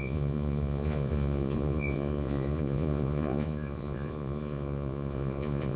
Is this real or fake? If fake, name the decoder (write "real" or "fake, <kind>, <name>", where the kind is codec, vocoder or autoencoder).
fake, vocoder, Vocos